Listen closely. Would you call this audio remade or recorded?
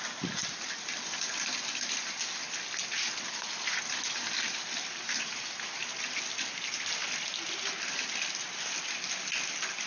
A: recorded